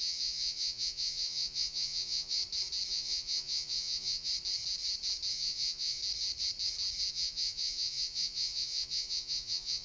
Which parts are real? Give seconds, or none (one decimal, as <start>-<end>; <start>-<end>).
2.4-2.9; 4.3-5.3; 6.0-7.1